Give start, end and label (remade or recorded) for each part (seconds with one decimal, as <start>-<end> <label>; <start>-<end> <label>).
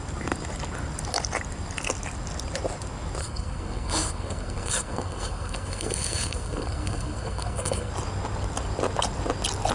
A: 0.0-3.2 recorded; 3.2-7.9 remade; 7.9-9.7 recorded